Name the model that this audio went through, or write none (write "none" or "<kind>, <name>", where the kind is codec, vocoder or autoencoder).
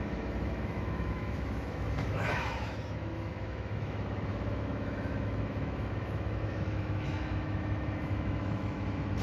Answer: autoencoder, DAC-VAE